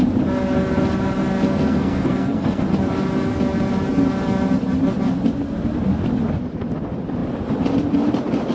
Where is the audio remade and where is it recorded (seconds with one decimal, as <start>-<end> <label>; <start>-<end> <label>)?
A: 0.0-1.5 recorded; 1.5-2.6 remade; 2.6-8.5 recorded